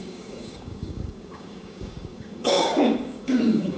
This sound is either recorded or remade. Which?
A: remade